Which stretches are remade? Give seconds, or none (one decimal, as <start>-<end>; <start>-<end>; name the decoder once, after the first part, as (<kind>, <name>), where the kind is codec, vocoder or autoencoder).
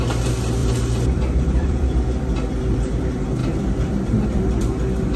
0.6-2.0 (vocoder, BigVGAN v2); 3.4-4.4